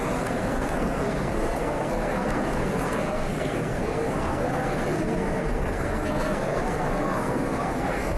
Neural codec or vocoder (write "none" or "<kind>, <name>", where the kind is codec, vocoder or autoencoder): codec, SNAC